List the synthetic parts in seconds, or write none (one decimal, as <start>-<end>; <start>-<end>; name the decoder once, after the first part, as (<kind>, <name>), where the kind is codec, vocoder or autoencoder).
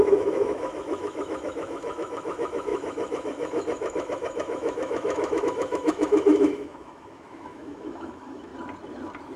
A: 0.0-8.5 (autoencoder, DAC-VAE)